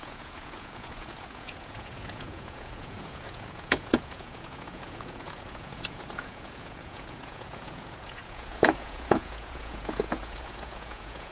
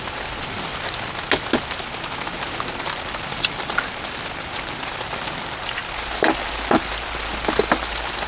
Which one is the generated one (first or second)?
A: first